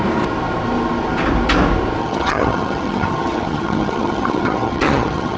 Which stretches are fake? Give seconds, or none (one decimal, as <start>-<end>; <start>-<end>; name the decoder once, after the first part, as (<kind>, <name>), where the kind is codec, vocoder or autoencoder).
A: 2.0-5.4 (vocoder, HiFi-GAN)